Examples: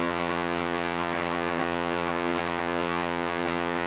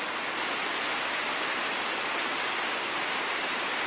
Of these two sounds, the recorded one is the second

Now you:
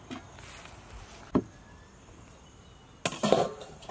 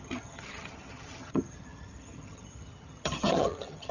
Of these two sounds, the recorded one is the first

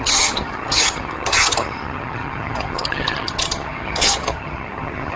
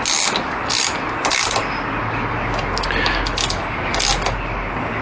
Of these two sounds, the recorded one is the second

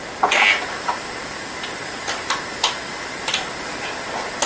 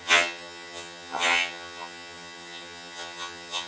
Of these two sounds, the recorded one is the first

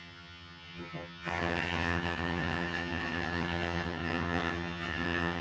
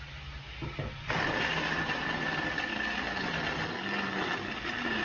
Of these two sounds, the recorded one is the second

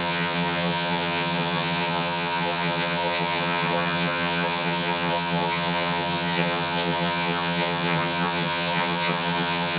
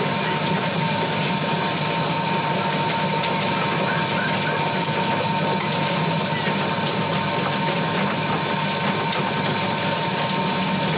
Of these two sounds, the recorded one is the second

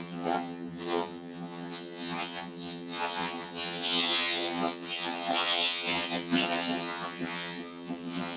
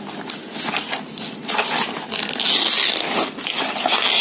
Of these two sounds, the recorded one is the second